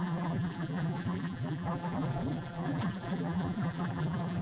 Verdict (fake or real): fake